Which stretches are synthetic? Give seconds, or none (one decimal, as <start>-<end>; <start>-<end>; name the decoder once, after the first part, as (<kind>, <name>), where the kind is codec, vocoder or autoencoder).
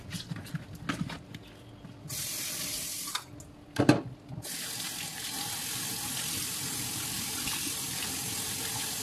none